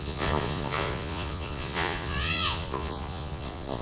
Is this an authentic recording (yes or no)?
no